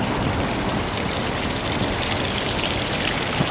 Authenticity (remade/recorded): recorded